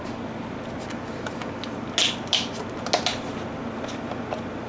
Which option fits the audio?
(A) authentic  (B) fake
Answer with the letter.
A